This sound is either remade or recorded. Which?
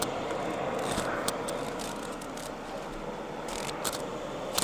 recorded